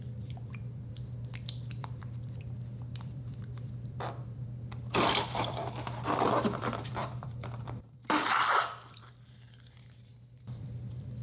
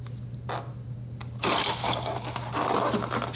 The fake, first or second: first